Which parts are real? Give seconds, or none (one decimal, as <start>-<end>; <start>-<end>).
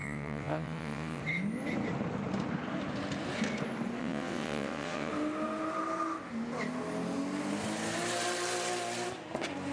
1.2-4.0; 5.1-9.7